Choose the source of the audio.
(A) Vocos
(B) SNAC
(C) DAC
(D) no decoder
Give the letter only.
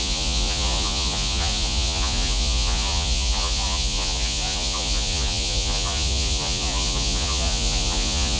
A